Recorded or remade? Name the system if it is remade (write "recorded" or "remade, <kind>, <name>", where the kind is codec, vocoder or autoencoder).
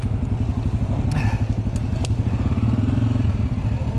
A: recorded